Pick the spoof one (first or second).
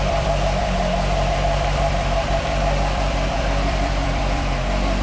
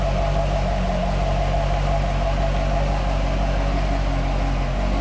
first